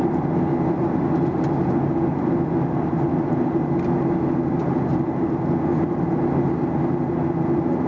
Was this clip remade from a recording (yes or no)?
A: no